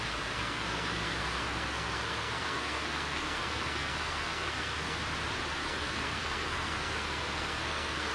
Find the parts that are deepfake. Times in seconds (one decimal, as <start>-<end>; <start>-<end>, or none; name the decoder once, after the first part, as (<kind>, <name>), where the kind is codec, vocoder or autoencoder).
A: 0.0-5.0 (codec, SNAC); 5.6-8.1